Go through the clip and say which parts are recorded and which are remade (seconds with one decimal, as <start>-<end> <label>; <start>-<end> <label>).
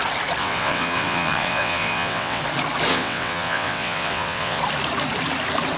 0.0-0.4 recorded; 0.4-2.4 remade; 2.4-2.9 recorded; 2.9-4.6 remade; 4.6-5.8 recorded